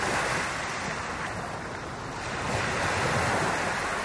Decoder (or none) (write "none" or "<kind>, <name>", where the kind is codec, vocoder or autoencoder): none